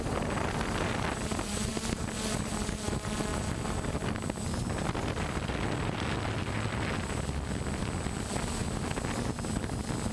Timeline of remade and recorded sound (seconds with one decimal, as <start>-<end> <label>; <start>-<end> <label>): 0.0-10.1 recorded

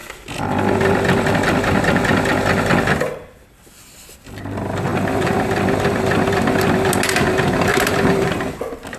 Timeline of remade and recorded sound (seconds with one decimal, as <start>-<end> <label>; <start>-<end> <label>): 0.0-4.9 recorded; 4.9-5.5 remade; 5.5-7.7 recorded; 7.7-8.4 remade; 8.4-9.0 recorded

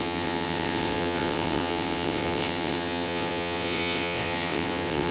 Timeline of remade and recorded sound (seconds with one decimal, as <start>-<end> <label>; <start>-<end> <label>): 0.0-5.1 remade

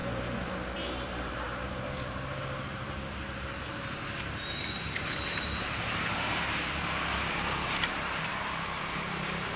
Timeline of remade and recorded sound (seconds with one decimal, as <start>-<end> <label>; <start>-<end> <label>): 0.0-9.6 remade